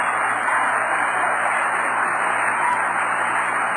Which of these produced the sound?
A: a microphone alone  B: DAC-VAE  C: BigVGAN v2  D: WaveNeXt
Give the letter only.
A